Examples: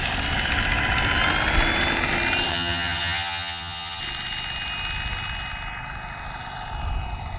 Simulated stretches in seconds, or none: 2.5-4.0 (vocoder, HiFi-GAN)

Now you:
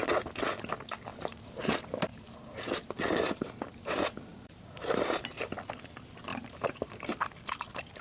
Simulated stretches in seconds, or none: 1.1-1.7 (vocoder, BigVGAN v2); 2.1-3.5; 4.3-5.2; 6.3-7.1

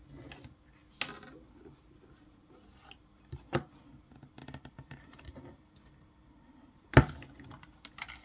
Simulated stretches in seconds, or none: 4.4-6.9 (vocoder, BigVGAN v2)

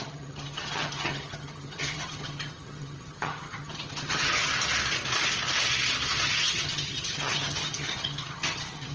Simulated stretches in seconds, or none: 0.0-4.5 (vocoder, HiFi-GAN); 6.2-8.9

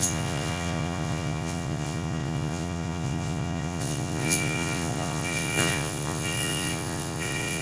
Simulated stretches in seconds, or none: 0.0-7.6 (vocoder, Vocos)